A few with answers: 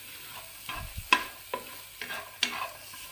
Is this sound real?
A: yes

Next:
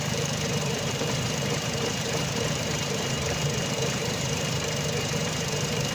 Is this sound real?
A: no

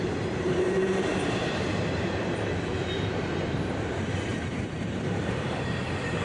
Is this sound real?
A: no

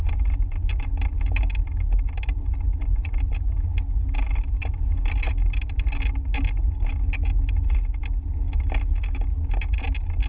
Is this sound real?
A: yes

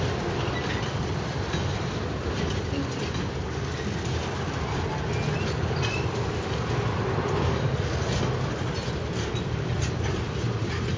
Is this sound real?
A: yes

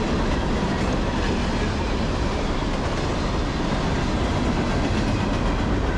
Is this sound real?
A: yes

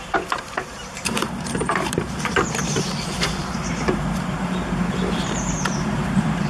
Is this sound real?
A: no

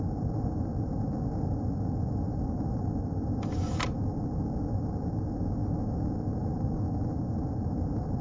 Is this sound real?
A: yes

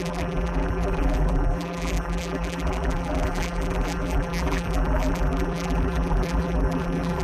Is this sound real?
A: no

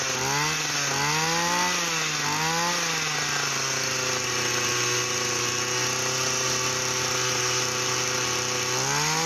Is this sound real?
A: yes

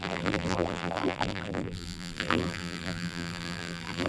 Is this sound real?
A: no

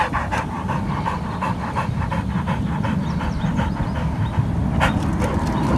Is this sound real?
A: no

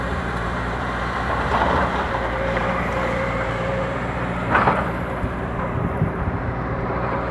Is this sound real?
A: no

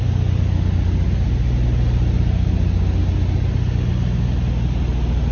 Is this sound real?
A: yes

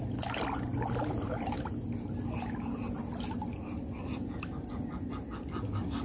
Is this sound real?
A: yes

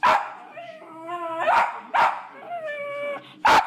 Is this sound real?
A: yes